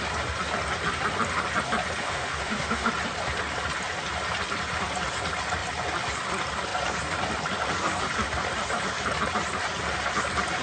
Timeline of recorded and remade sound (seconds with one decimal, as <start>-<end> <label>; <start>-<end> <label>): 0.0-2.0 recorded; 2.0-2.9 remade; 2.9-10.6 recorded